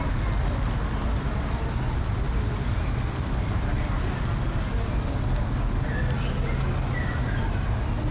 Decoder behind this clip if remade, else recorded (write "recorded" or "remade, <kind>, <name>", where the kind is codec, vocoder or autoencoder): recorded